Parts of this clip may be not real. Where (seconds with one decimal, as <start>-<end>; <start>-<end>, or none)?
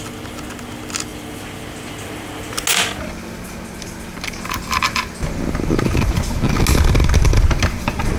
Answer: none